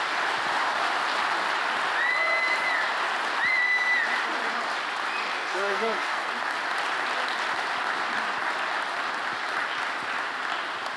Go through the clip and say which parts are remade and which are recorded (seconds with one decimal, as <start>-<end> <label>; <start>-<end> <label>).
0.0-5.2 recorded; 5.2-6.3 remade; 6.3-11.0 recorded

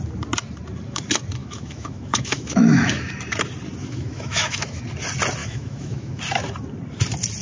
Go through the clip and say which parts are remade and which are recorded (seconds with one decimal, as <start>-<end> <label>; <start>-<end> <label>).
0.0-1.4 recorded; 1.4-3.1 remade; 3.1-3.8 recorded; 3.8-4.8 remade; 4.8-5.4 recorded; 5.4-6.2 remade; 6.2-7.4 recorded

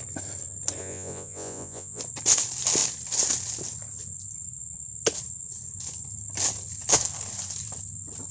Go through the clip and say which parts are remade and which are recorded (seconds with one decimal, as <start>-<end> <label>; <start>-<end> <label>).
0.0-0.8 recorded; 0.8-2.0 remade; 2.0-8.3 recorded

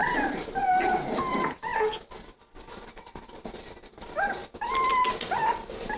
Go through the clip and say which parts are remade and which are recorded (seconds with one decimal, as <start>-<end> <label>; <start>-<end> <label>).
0.0-0.7 recorded; 0.7-1.7 remade; 1.7-3.9 recorded; 3.9-4.4 remade; 4.4-5.3 recorded; 5.3-6.0 remade

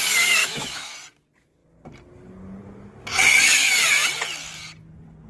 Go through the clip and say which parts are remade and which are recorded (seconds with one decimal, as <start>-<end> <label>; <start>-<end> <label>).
0.0-0.4 recorded; 0.4-0.9 remade; 0.9-5.3 recorded